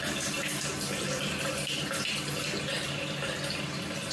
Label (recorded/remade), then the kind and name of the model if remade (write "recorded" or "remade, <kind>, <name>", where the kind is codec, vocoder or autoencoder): recorded